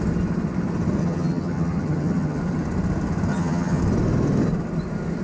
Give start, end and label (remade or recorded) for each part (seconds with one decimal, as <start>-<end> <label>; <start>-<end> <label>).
0.0-1.0 recorded; 1.0-2.4 remade; 2.4-3.3 recorded; 3.3-3.8 remade; 3.8-5.2 recorded